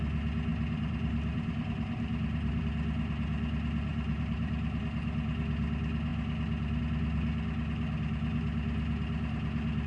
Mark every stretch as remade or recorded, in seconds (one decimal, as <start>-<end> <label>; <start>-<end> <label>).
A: 0.0-0.5 recorded; 0.5-2.6 remade; 2.6-3.9 recorded; 3.9-4.8 remade; 4.8-9.9 recorded